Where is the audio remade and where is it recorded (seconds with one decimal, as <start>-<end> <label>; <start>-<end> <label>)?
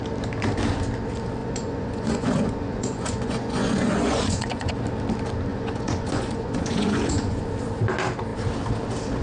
0.0-1.4 recorded; 1.4-4.7 remade; 4.7-5.5 recorded; 5.5-7.4 remade; 7.4-9.2 recorded